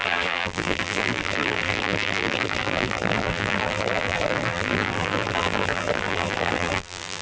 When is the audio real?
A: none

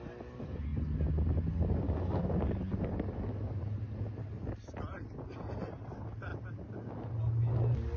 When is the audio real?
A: 0.0-8.0

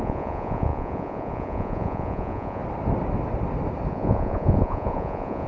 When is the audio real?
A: 2.6-3.9

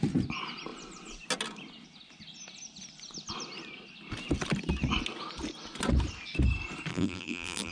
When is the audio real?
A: 0.0-6.9

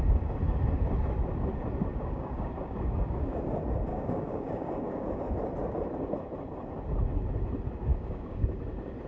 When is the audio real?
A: 0.0-1.9; 3.4-3.9; 5.2-7.9; 8.6-9.1

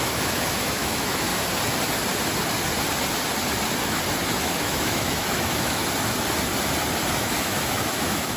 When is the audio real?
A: 1.3-4.4; 5.8-7.1

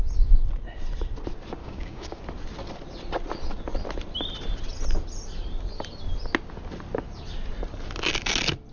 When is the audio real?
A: 0.0-1.6; 2.2-8.7

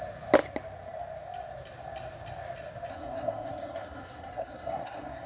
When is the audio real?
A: 0.0-2.9